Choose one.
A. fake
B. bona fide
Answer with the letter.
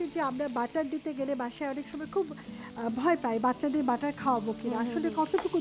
B